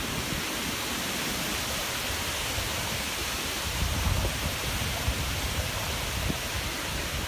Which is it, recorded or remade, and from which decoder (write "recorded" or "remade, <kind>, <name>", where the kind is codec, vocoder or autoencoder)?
recorded